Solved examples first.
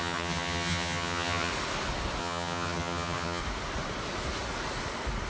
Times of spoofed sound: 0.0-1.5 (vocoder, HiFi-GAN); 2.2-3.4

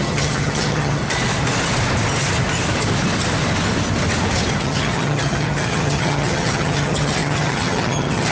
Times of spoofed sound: 0.0-1.0 (vocoder, HiFi-GAN); 4.5-8.3